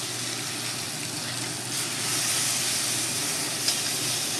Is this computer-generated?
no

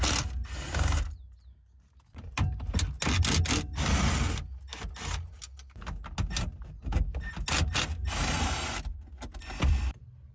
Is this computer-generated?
no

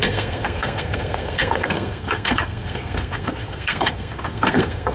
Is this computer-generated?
yes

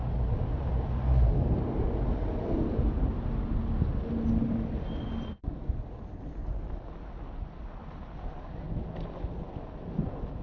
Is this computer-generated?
no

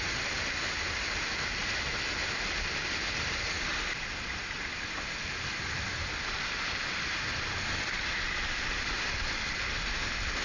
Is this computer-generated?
no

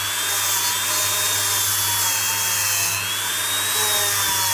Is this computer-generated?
no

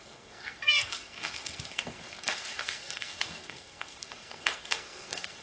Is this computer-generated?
yes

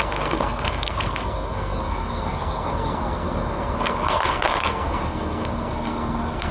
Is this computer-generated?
yes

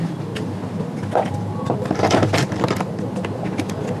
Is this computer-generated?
no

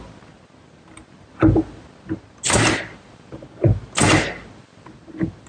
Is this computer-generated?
no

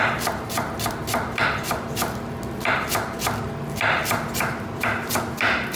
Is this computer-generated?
no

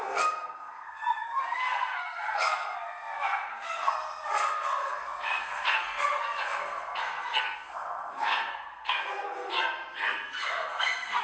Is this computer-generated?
yes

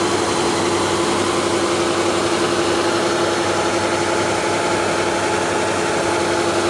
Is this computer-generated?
no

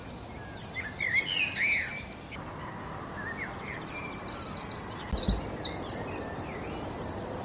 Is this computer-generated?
no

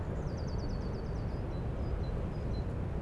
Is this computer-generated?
no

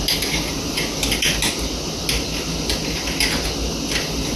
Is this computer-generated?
no